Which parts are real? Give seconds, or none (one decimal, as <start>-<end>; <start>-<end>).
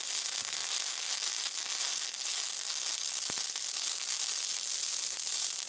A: 0.0-5.7